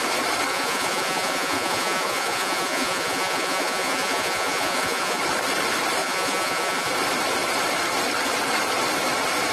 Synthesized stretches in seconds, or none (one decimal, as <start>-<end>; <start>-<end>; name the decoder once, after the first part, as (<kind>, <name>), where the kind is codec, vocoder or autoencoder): 0.5-5.2 (vocoder, Vocos); 6.0-6.9